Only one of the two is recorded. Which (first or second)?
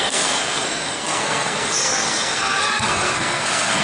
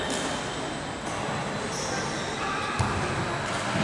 second